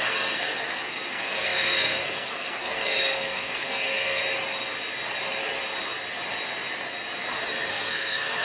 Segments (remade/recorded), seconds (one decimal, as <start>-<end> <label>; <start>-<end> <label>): 0.0-4.2 remade; 4.2-7.7 recorded; 7.7-8.4 remade